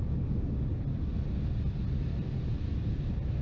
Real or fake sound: real